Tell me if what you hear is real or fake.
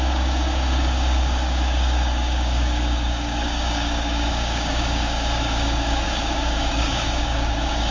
fake